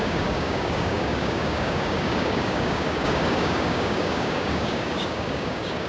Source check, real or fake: fake